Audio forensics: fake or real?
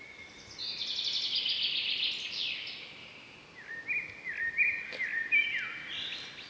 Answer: real